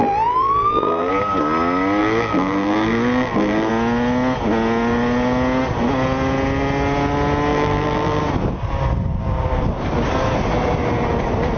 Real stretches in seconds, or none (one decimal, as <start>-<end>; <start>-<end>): 1.1-2.0; 3.7-7.5; 8.2-11.6